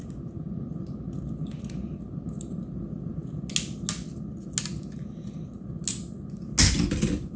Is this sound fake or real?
real